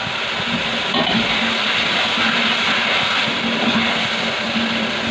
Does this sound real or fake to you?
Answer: real